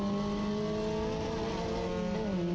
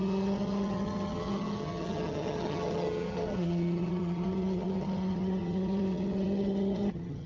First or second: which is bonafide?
first